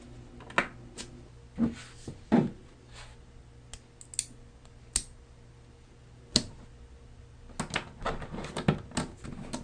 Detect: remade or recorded recorded